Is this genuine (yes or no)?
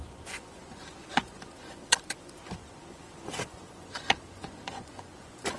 no